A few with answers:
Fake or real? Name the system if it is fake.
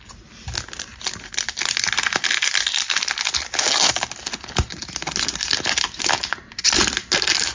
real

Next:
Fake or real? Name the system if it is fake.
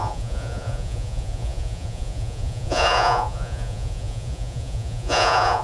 fake, vocoder, Vocos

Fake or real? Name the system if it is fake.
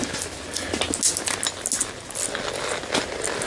real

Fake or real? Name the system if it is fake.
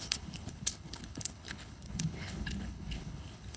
fake, codec, HILCodec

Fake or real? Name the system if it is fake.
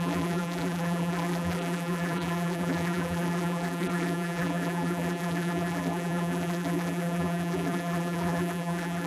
fake, vocoder, BigVGAN v2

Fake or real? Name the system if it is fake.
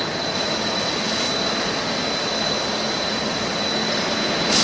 real